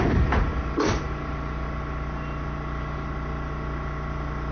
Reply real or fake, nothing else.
real